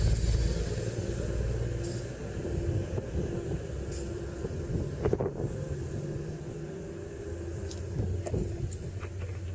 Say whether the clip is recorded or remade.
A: recorded